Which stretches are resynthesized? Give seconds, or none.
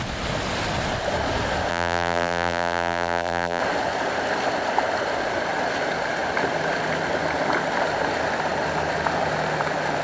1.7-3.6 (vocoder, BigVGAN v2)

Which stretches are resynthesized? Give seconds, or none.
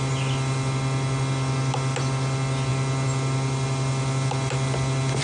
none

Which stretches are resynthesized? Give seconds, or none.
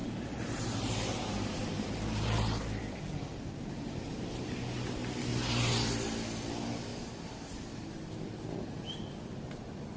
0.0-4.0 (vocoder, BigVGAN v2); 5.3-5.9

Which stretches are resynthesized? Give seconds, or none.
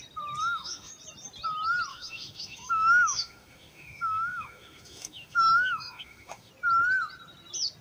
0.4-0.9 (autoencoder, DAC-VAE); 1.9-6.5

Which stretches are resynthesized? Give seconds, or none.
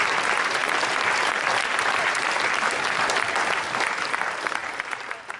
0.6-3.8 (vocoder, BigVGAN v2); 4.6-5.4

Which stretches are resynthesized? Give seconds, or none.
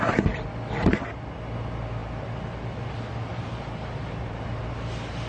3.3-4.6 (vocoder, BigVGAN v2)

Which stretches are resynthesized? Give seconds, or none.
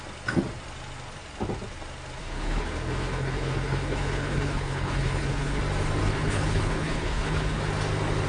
2.2-5.6 (codec, HILCodec); 6.0-7.6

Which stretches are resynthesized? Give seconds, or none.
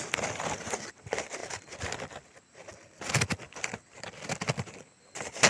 none